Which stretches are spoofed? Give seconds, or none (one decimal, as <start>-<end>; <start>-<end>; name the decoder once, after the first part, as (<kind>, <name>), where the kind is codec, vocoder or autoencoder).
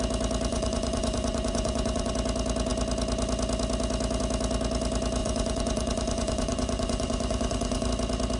0.5-2.1 (vocoder, Vocos); 5.2-7.9